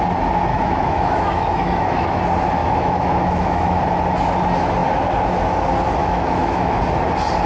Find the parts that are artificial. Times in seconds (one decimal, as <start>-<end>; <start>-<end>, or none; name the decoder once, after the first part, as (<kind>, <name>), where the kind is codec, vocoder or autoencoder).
0.5-2.2 (autoencoder, DAC-VAE); 2.6-3.8; 6.0-6.8